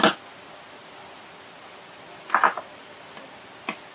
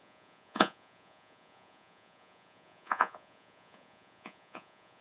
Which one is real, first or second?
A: first